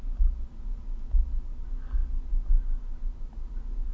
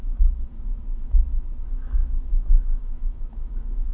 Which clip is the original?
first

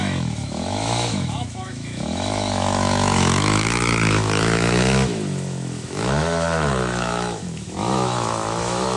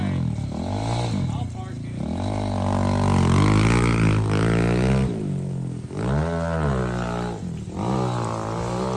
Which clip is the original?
second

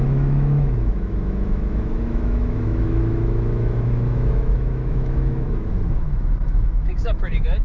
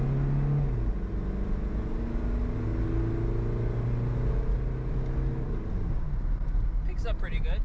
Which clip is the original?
second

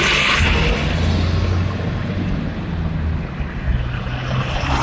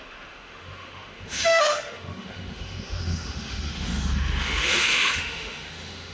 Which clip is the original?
first